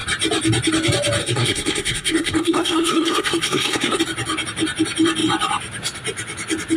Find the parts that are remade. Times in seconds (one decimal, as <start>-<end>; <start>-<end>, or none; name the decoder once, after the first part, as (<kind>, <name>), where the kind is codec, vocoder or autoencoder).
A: 1.2-4.0 (codec, SNAC)